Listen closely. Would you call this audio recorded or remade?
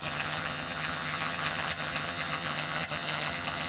remade